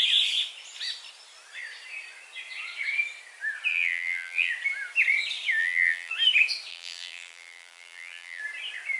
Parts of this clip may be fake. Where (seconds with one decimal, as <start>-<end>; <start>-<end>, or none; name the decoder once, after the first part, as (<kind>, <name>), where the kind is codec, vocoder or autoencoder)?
3.7-4.5 (vocoder, BigVGAN v2); 5.6-6.1; 6.7-8.4